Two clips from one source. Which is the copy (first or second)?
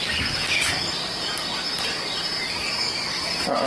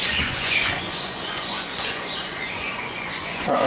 second